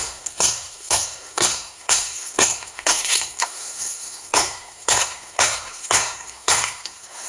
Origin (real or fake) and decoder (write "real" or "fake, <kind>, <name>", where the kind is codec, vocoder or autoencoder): fake, codec, SNAC